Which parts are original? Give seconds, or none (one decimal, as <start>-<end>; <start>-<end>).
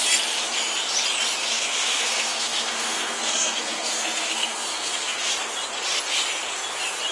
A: 0.0-1.4; 5.3-7.1